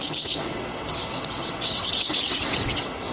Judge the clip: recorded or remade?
remade